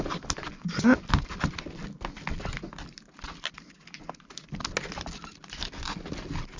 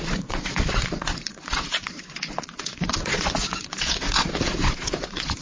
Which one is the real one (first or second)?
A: first